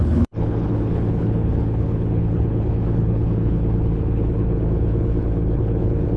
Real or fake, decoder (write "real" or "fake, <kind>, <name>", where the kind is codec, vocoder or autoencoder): fake, codec, HILCodec